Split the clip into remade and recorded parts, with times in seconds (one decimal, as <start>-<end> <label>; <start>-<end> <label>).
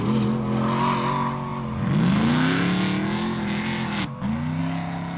0.0-5.2 recorded